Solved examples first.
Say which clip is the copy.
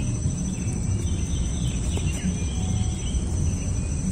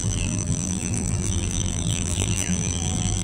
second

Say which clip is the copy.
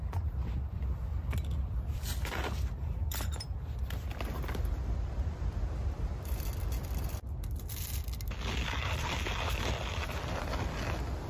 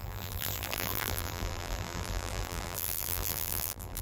second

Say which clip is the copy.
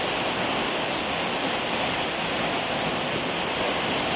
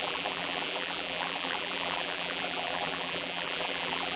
second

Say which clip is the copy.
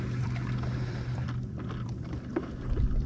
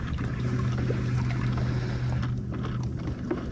first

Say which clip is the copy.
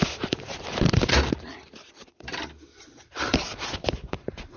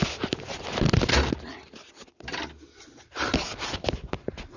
first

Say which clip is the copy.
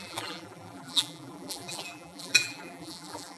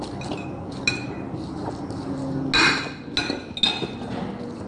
first